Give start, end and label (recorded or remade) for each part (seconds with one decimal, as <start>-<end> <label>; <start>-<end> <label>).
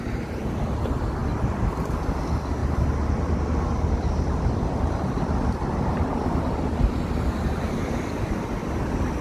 0.0-9.2 recorded